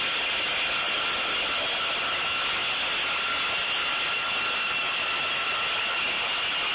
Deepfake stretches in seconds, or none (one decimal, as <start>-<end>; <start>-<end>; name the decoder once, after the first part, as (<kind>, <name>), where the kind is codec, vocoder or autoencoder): none